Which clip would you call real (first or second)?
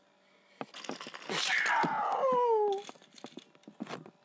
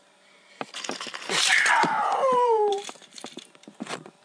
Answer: first